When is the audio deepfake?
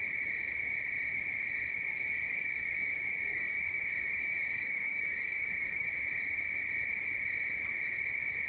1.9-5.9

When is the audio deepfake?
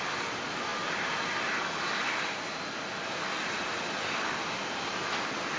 none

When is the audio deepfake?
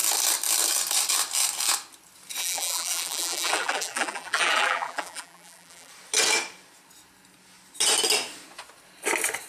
2.4-5.9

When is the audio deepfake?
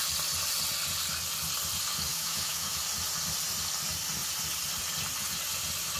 2.1-2.8